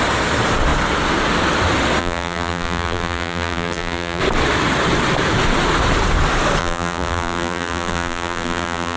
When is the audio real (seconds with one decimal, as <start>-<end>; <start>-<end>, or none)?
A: 0.0-2.0; 4.2-6.6